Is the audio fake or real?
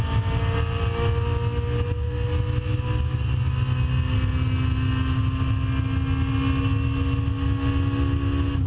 real